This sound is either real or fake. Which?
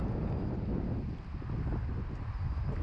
real